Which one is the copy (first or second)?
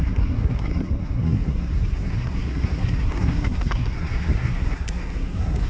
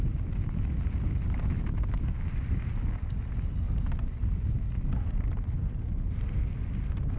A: first